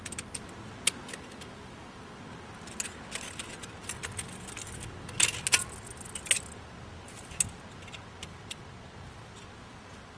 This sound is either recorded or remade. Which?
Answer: recorded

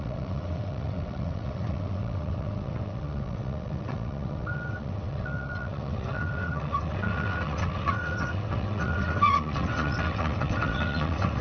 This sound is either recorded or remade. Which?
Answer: remade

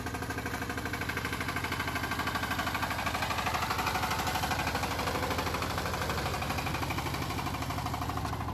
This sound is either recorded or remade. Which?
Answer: recorded